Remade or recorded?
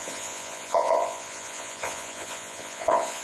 remade